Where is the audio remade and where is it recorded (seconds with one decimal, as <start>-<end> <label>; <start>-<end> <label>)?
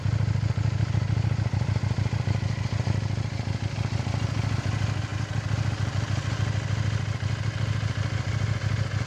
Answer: 0.0-9.1 recorded